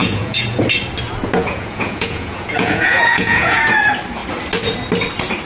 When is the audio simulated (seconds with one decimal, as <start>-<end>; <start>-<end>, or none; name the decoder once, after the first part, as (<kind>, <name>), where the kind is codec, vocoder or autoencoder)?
0.0-0.6 (vocoder, Vocos); 1.4-3.8